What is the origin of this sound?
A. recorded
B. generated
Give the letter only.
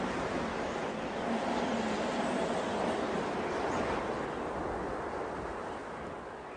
A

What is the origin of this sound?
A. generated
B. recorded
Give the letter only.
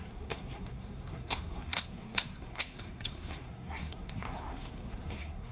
A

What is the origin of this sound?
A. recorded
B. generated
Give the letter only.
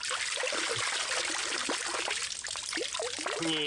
A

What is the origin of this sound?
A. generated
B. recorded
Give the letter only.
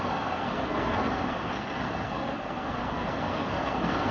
A